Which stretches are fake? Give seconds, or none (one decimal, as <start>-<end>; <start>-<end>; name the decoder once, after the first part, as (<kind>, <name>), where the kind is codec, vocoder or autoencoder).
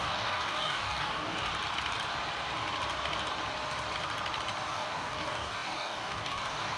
0.0-1.5 (codec, DAC); 4.7-6.8